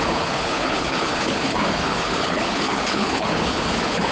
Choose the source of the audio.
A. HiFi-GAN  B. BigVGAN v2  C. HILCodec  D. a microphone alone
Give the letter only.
C